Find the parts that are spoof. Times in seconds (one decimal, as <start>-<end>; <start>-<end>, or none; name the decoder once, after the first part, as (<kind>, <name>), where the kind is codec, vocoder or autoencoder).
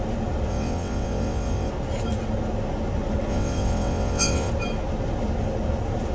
0.5-1.7 (vocoder, WaveNeXt); 3.3-4.5